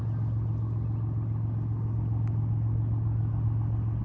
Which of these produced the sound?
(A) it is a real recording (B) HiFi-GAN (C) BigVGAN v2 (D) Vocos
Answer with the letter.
A